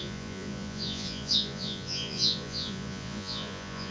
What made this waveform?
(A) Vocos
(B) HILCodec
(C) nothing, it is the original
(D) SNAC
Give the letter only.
A